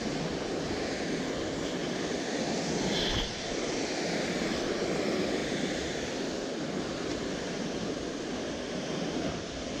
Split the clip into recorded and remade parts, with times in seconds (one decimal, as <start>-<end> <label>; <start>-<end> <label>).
0.0-1.8 recorded; 1.8-3.4 remade; 3.4-7.1 recorded; 7.1-8.9 remade; 8.9-9.8 recorded